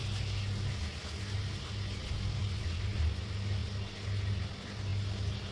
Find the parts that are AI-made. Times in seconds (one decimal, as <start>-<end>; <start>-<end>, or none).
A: none